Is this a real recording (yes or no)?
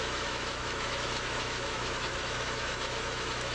no